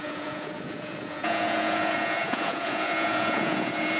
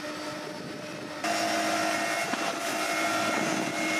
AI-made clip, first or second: first